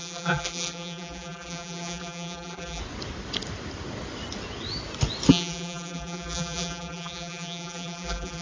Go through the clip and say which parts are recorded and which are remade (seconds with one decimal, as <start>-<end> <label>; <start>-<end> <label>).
0.0-2.8 remade; 2.8-5.3 recorded; 5.3-8.4 remade